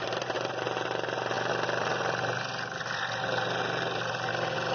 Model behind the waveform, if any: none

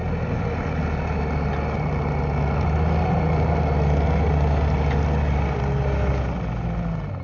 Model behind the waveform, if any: none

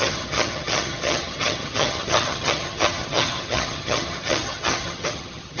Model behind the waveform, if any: vocoder, HiFi-GAN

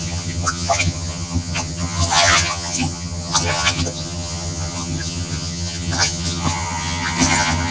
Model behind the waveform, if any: vocoder, HiFi-GAN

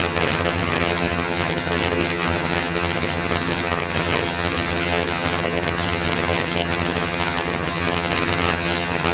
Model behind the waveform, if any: vocoder, HiFi-GAN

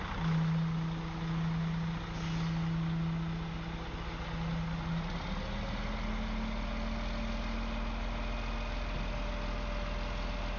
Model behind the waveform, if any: none